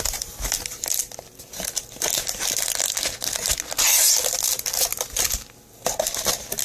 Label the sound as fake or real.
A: real